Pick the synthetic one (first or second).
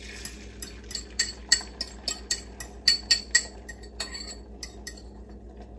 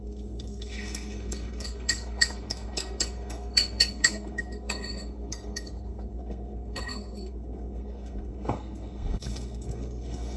second